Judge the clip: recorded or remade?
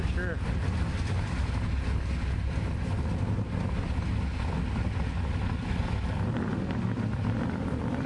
recorded